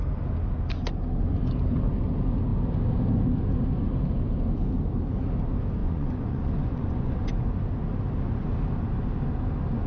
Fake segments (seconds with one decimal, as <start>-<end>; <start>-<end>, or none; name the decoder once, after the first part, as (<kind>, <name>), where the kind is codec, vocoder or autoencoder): 5.8-7.3 (vocoder, Vocos)